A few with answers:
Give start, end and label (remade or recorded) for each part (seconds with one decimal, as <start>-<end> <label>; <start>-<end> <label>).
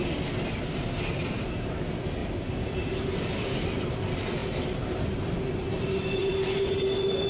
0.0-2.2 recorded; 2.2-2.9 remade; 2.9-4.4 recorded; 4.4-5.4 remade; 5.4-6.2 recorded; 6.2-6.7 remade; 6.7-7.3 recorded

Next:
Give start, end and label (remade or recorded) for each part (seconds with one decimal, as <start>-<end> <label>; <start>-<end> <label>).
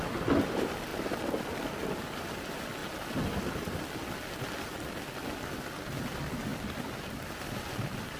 0.0-0.9 remade; 0.9-1.6 recorded; 1.6-2.8 remade; 2.8-5.7 recorded; 5.7-8.2 remade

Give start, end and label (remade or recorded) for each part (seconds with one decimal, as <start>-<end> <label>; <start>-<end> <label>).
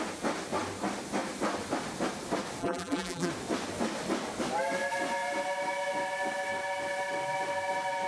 0.0-2.6 recorded; 2.6-3.3 remade; 3.3-8.1 recorded